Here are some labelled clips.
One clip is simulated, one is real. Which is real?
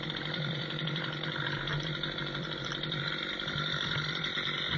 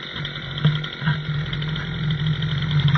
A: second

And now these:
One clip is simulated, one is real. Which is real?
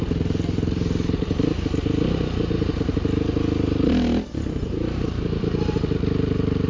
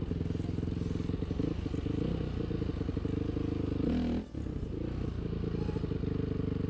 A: second